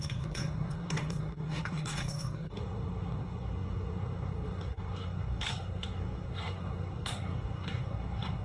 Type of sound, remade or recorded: remade